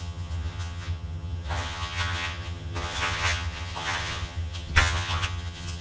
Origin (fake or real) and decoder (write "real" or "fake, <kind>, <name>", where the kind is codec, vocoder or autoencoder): fake, vocoder, HiFi-GAN